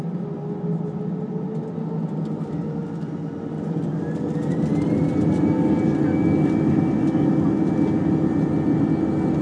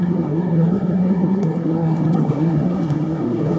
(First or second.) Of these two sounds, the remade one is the second